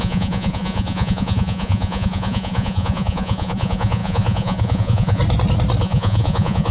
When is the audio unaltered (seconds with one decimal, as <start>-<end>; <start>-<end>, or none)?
5.2-5.8